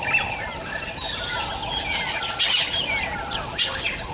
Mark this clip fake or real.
real